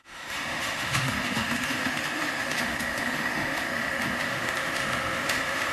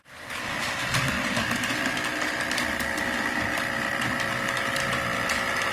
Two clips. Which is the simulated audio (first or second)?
first